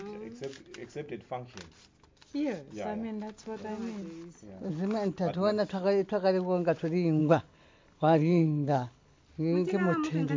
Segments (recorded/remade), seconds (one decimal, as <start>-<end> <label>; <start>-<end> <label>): 0.0-7.2 recorded; 7.2-9.2 remade; 9.2-10.4 recorded